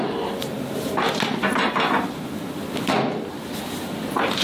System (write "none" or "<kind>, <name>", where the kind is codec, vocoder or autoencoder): none